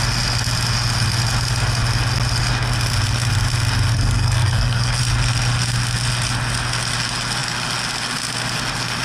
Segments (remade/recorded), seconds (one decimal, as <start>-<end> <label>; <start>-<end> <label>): 0.0-3.9 recorded; 3.9-5.0 remade; 5.0-9.0 recorded